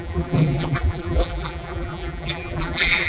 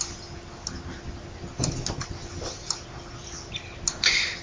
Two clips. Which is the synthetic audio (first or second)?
first